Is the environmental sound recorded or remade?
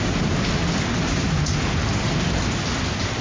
recorded